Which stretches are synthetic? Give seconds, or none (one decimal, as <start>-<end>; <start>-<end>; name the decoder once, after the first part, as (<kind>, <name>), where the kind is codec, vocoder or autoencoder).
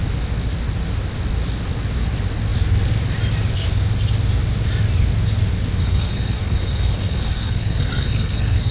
5.8-8.7 (codec, SNAC)